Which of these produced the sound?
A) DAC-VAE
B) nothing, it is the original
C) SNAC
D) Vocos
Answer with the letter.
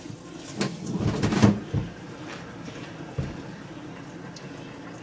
B